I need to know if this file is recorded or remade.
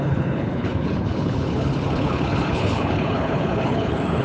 remade